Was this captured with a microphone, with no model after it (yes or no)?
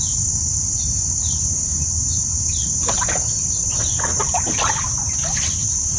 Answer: no